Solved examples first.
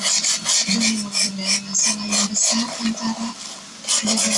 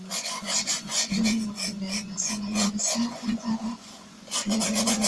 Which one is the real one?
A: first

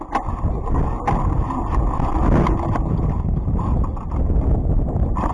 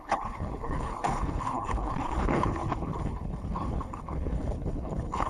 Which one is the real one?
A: first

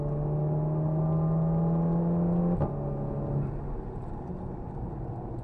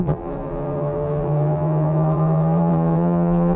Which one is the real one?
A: first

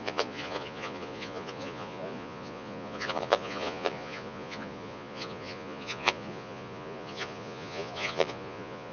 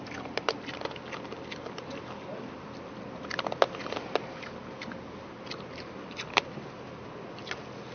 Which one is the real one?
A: second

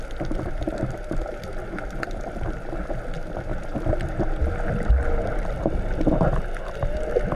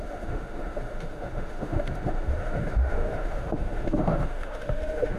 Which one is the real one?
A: first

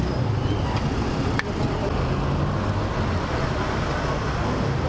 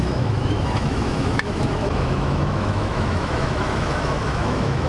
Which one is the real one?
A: first